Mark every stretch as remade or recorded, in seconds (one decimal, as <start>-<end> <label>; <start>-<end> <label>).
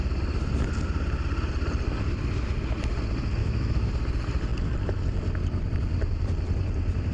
0.0-3.4 recorded; 3.4-3.9 remade; 3.9-7.1 recorded